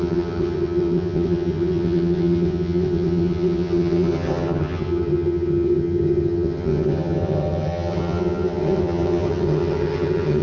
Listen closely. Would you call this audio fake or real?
fake